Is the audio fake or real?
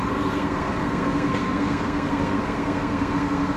fake